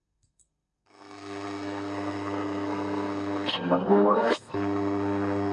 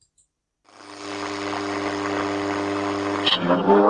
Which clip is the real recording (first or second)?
second